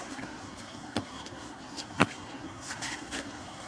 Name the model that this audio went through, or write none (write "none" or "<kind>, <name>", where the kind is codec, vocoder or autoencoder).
codec, SNAC